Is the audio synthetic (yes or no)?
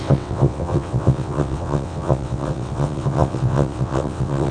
yes